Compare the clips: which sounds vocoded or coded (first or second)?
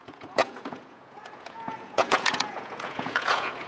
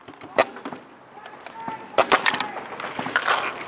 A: first